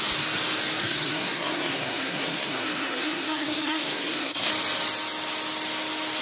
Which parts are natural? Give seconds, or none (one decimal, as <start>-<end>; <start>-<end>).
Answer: 0.0-0.8; 4.5-6.2